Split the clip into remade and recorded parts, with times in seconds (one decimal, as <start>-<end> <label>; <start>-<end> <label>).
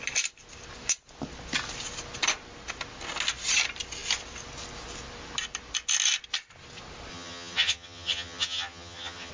0.0-7.1 recorded; 7.1-9.3 remade